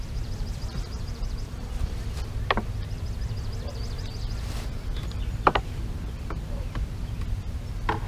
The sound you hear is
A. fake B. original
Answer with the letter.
A